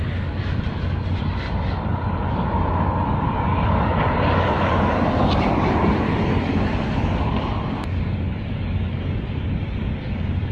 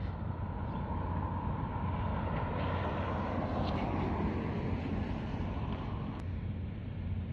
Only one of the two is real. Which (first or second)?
second